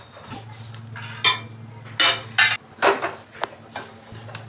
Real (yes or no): yes